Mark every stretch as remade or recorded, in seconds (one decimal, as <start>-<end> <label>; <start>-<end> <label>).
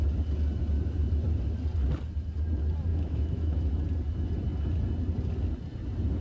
0.0-2.9 recorded; 2.9-3.5 remade; 3.5-6.2 recorded